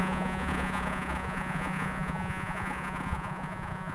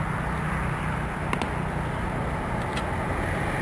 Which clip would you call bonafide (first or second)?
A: second